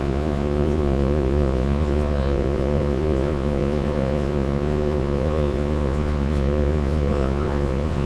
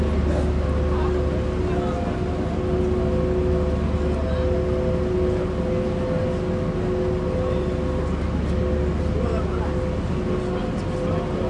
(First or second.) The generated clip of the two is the first